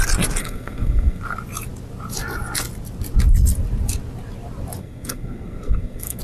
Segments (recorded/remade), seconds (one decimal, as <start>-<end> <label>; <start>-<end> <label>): 0.0-0.4 recorded; 0.4-1.2 remade; 1.2-4.8 recorded; 4.8-6.2 remade